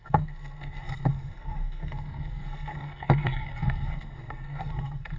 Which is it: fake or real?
fake